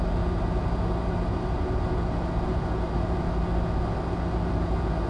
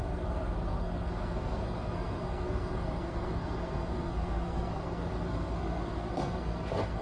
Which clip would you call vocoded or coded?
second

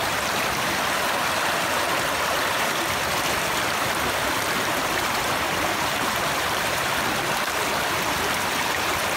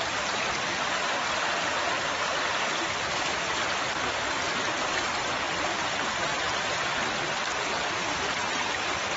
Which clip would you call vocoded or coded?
first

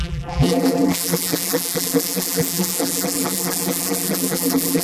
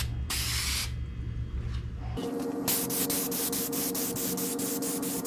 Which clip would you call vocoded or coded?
first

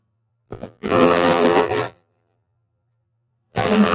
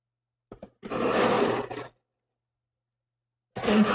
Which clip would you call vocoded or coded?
first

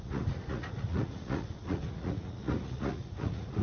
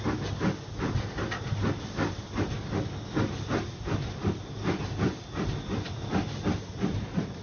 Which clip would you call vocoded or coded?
first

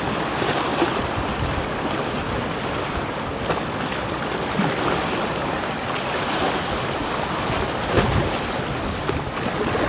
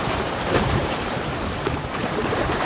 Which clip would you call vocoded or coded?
second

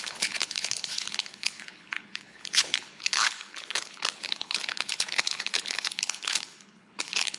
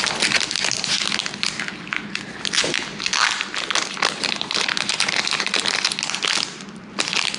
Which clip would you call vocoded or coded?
first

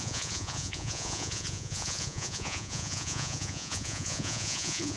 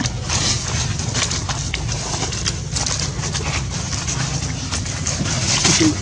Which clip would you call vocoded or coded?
first